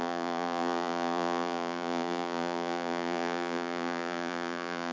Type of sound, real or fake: fake